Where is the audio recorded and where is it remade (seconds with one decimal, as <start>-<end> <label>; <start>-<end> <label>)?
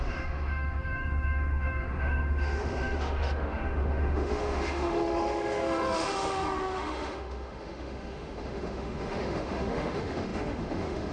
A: 0.0-11.1 remade